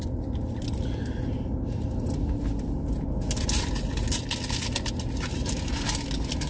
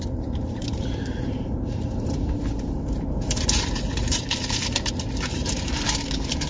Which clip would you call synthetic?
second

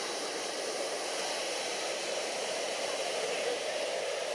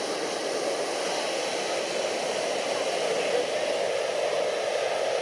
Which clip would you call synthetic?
first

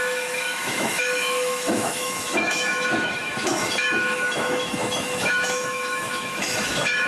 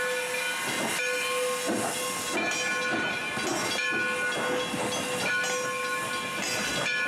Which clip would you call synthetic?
first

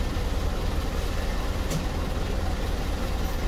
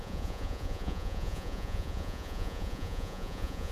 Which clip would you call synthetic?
second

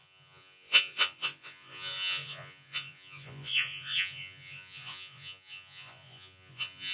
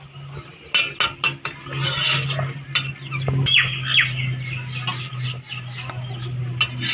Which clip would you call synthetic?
first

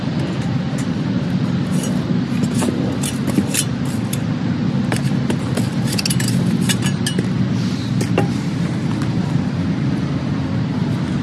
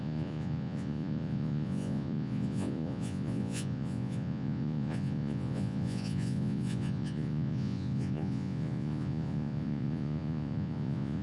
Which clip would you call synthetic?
second